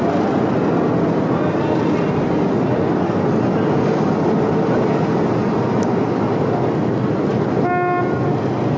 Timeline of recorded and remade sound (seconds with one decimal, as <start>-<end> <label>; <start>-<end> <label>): 0.0-8.8 recorded

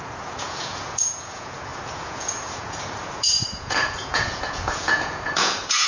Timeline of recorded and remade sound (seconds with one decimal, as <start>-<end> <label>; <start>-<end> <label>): 0.0-5.9 remade